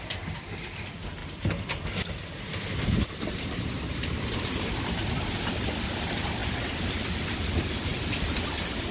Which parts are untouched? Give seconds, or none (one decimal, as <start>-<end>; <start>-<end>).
1.2-4.4; 6.4-6.9; 7.9-8.9